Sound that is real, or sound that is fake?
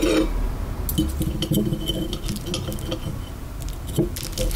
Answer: real